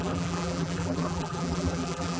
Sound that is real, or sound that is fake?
fake